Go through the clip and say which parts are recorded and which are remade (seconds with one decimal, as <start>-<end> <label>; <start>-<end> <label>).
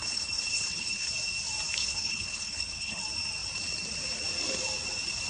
0.0-1.1 remade; 1.1-1.8 recorded; 1.8-3.0 remade; 3.0-5.3 recorded